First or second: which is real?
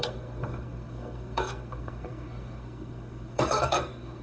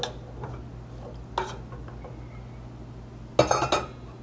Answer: second